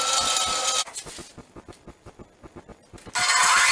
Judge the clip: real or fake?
real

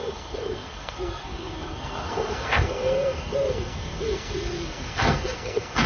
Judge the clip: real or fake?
fake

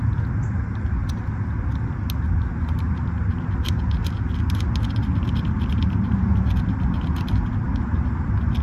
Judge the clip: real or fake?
real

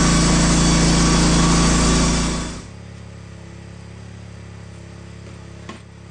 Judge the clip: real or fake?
real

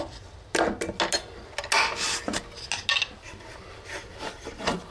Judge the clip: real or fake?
real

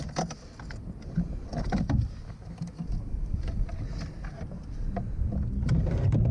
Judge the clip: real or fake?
real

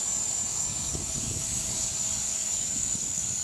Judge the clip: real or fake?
fake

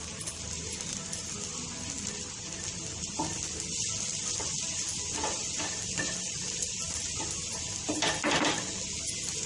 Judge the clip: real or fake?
real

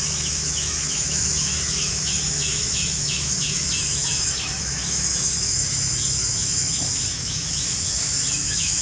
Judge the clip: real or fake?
fake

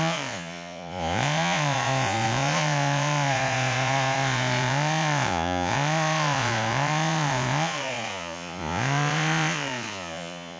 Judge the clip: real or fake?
fake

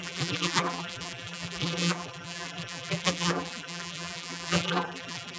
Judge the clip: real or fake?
fake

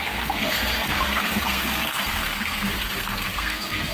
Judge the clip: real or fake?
fake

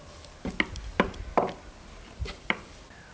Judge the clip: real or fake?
real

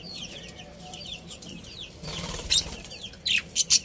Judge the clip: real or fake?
fake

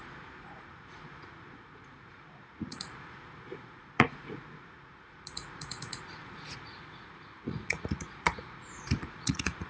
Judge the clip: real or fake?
fake